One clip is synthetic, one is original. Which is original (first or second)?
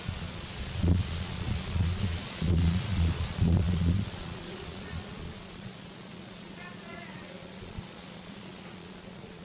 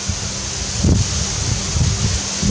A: second